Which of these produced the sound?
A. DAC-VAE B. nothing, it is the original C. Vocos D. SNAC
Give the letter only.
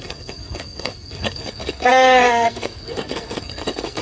D